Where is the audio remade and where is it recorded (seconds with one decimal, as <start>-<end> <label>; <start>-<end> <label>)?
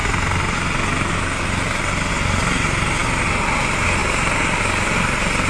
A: 0.0-5.5 recorded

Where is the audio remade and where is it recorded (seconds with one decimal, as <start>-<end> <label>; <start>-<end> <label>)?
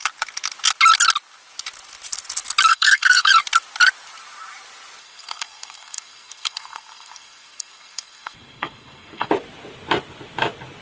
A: 0.0-2.7 recorded; 2.7-3.3 remade; 3.3-5.0 recorded; 5.0-9.3 remade; 9.3-10.8 recorded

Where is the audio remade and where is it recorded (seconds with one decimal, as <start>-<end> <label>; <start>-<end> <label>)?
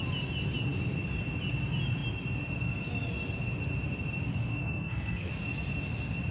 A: 0.0-4.3 recorded; 4.3-5.3 remade; 5.3-6.3 recorded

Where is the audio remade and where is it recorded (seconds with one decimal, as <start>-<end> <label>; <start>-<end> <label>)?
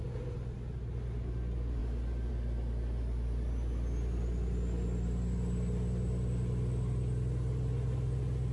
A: 0.0-8.5 recorded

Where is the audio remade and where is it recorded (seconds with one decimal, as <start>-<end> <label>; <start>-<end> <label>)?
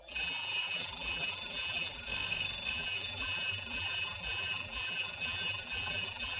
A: 0.0-2.1 remade; 2.1-2.7 recorded; 2.7-6.4 remade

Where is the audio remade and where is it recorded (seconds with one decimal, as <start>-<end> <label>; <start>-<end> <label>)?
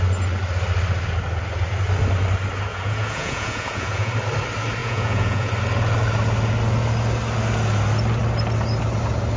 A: 0.0-2.7 recorded; 2.7-4.1 remade; 4.1-4.8 recorded; 4.8-5.5 remade; 5.5-9.4 recorded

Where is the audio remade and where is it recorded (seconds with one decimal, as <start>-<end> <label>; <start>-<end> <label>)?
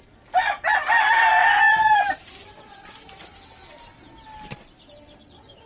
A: 0.0-1.4 recorded; 1.4-4.8 remade; 4.8-5.7 recorded